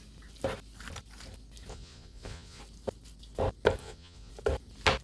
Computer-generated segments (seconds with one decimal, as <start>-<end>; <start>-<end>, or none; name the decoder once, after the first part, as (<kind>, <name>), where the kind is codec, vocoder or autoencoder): 1.7-2.6 (vocoder, Vocos); 3.8-4.3